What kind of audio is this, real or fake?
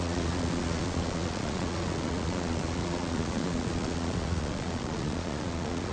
fake